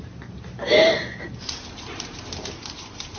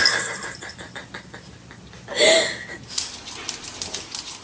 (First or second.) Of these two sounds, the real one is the second